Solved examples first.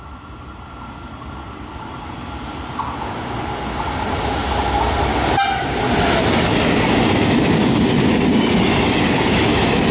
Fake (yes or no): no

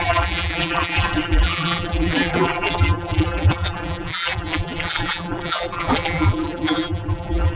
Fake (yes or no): yes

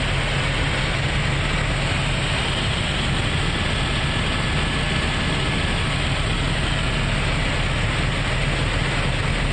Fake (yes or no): no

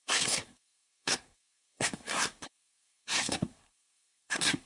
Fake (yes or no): yes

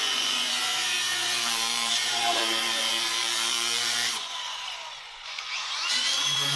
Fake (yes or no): yes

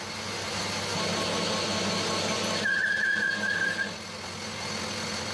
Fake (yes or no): no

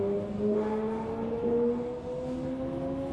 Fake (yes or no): no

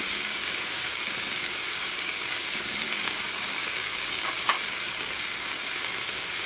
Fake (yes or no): yes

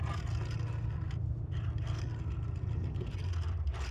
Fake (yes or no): no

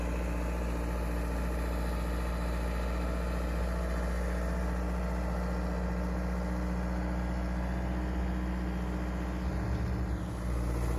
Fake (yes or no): no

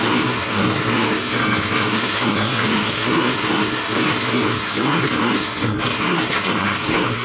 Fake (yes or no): yes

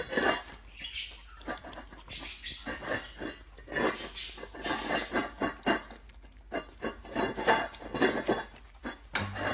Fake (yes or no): no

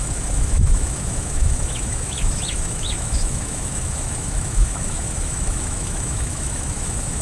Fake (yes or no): yes